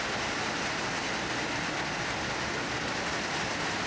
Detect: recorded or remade recorded